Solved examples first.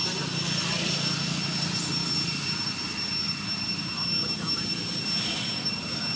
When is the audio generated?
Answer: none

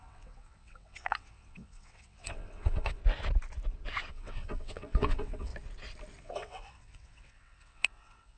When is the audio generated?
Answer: 0.0-3.0 (vocoder, WaveNeXt); 4.1-5.5; 6.2-8.4